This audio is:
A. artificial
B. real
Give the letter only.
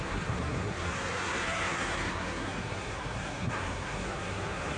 A